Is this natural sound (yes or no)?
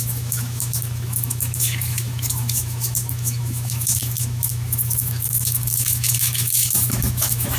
no